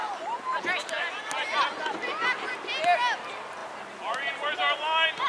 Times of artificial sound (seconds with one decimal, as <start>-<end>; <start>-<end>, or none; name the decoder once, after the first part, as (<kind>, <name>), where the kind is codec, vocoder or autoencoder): none